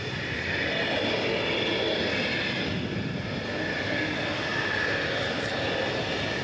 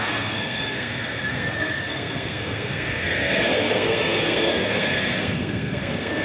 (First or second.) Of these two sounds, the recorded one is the first